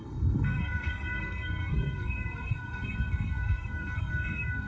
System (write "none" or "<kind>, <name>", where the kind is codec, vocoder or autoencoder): codec, SNAC